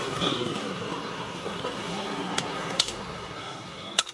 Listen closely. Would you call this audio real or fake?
fake